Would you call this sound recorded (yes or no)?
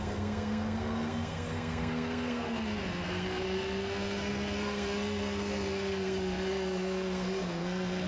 no